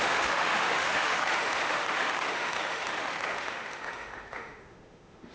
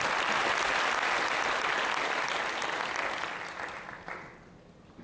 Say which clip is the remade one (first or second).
first